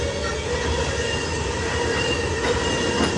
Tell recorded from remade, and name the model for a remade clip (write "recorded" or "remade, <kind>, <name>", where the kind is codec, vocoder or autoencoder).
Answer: recorded